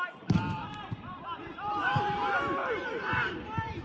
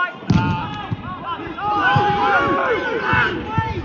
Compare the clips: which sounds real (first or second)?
second